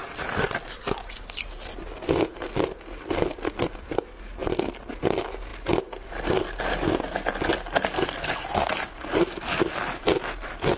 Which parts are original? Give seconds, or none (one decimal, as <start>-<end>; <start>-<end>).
0.0-10.8